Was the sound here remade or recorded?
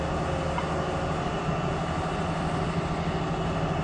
recorded